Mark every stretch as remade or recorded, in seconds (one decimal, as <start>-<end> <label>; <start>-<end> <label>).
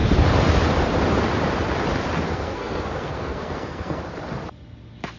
0.0-2.3 recorded; 2.3-4.0 remade; 4.0-5.2 recorded